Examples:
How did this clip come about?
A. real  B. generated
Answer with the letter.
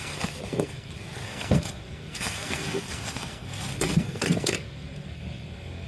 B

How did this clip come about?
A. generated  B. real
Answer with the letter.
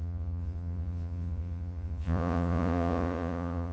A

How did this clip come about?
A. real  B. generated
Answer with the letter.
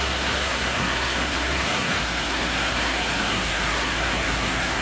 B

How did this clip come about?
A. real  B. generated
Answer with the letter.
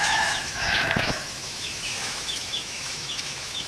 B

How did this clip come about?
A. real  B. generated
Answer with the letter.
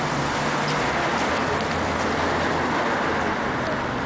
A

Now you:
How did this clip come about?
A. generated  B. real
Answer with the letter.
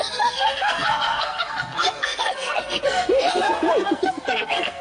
A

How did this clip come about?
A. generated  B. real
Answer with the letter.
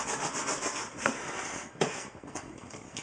A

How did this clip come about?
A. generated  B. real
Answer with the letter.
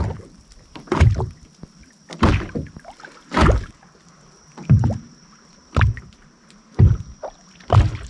B